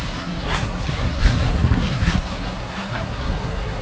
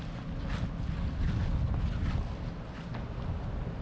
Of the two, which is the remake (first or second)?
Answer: first